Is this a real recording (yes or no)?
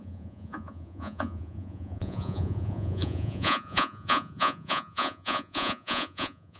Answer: no